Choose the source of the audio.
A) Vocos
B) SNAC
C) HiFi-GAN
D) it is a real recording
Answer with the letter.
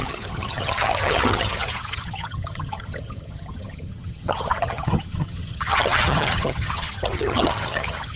C